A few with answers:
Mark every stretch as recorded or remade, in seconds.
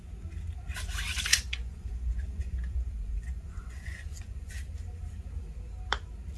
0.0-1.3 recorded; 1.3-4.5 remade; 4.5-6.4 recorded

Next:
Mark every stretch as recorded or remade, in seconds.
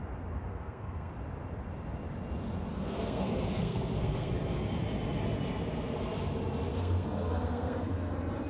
0.0-0.5 recorded; 0.5-1.1 remade; 1.1-2.7 recorded; 2.7-4.3 remade; 4.3-6.7 recorded; 6.7-8.1 remade; 8.1-8.5 recorded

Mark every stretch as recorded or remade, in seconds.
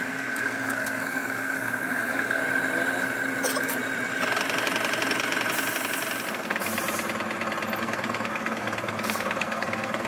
0.0-2.4 remade; 2.4-6.3 recorded; 6.3-6.7 remade; 6.7-7.8 recorded; 7.8-10.1 remade